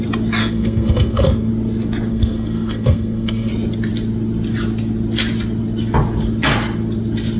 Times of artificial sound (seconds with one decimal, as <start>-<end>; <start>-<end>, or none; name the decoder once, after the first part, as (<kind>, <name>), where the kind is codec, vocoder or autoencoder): 0.4-1.5 (codec, SNAC); 2.1-3.5